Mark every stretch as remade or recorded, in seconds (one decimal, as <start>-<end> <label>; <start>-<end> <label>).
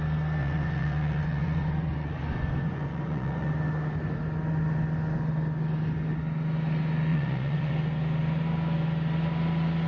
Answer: 0.0-0.4 recorded; 0.4-3.5 remade; 3.5-7.1 recorded; 7.1-7.7 remade; 7.7-9.9 recorded